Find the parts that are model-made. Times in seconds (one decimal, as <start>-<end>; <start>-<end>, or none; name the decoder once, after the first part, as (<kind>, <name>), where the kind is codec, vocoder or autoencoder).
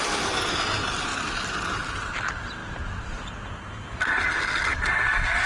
1.1-2.1 (vocoder, BigVGAN v2)